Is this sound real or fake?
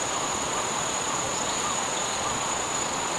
fake